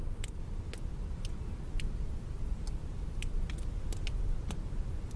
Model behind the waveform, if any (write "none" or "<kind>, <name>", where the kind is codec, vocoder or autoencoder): none